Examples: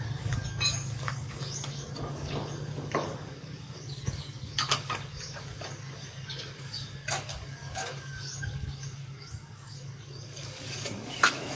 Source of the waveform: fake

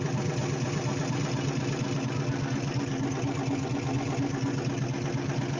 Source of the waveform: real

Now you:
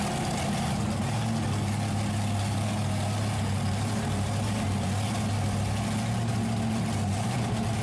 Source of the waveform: real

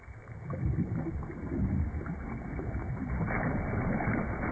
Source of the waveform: real